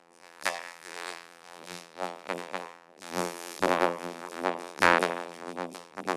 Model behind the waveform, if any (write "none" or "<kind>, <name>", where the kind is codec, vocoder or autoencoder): vocoder, BigVGAN v2